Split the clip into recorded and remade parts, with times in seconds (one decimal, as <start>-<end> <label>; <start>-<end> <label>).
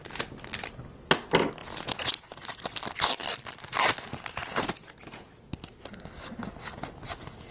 0.0-1.6 recorded; 1.6-2.6 remade; 2.6-4.5 recorded; 4.5-5.3 remade; 5.3-7.5 recorded